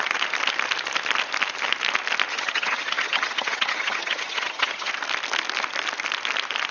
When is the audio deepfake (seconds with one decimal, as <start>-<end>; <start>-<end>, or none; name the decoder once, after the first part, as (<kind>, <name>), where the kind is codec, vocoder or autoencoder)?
2.3-4.9 (vocoder, HiFi-GAN)

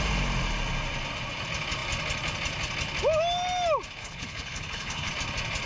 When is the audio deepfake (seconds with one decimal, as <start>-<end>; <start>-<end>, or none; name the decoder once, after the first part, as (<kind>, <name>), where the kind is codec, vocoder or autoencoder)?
4.0-5.1 (codec, HILCodec)